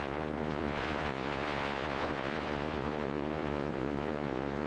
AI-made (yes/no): yes